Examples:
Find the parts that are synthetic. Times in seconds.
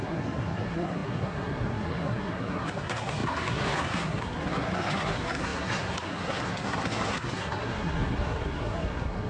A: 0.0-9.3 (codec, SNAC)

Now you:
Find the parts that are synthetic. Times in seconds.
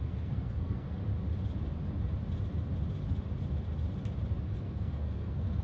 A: 0.0-1.0 (codec, SNAC); 4.4-5.6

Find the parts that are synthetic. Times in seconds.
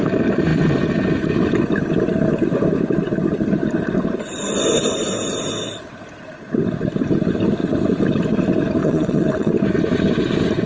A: 8.8-9.5 (vocoder, WaveNeXt)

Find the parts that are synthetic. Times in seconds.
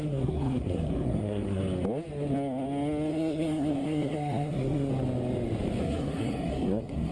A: 0.0-1.6 (codec, SNAC); 3.1-4.9; 5.8-7.1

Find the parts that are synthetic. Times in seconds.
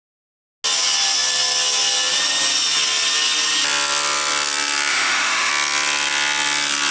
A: 4.9-5.5 (autoencoder, DAC-VAE)